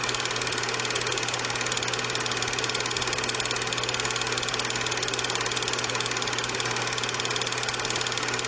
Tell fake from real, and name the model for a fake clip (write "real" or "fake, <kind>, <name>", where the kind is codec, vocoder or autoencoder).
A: real